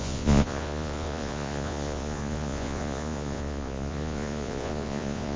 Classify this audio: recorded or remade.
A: remade